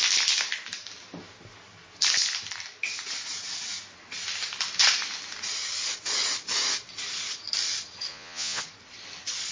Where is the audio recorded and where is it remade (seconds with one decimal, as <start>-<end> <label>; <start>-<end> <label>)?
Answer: 0.0-8.1 recorded; 8.1-8.6 remade; 8.6-9.5 recorded